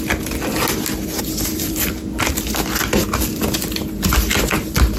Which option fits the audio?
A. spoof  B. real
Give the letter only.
B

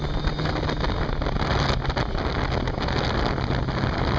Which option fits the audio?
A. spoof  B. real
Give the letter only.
B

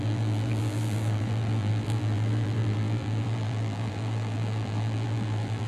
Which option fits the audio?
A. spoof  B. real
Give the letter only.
A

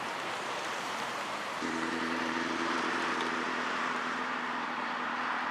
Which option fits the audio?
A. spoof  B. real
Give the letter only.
A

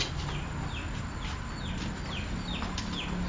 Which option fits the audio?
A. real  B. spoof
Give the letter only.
A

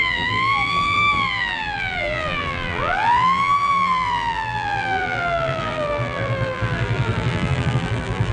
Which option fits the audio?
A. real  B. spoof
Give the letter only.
B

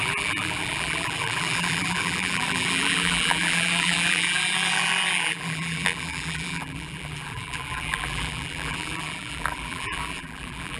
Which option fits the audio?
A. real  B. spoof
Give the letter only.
B